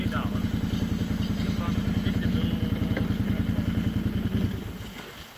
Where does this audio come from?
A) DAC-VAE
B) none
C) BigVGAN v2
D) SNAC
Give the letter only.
B